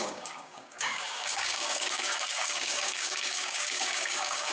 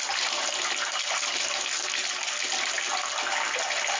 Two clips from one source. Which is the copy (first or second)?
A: first